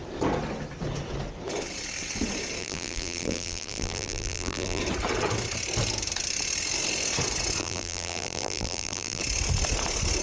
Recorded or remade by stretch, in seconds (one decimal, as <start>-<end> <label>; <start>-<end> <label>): 0.0-2.6 recorded; 2.6-4.8 remade; 4.8-7.6 recorded; 7.6-9.2 remade; 9.2-10.2 recorded